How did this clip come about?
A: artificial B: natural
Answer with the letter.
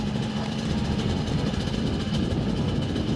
B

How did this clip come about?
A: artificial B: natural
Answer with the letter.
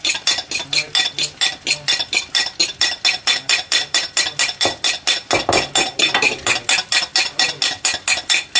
B